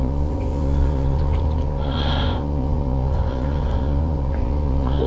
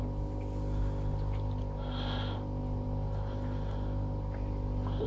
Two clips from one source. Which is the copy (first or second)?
first